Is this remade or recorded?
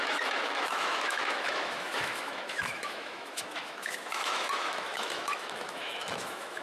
remade